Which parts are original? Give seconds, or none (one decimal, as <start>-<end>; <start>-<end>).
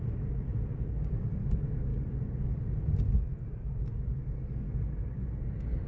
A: 0.0-5.9